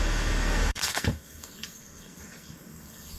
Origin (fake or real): fake